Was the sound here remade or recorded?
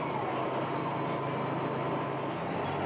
recorded